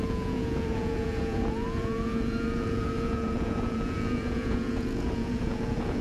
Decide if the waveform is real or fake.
fake